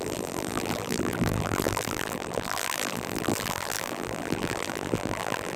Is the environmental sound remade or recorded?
remade